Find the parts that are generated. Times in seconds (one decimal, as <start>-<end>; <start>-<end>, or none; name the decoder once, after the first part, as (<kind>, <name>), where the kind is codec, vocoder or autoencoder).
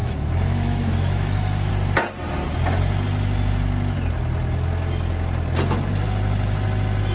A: 0.0-1.7 (autoencoder, DAC-VAE)